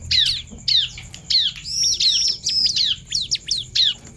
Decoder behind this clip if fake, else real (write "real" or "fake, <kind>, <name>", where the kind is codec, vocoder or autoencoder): real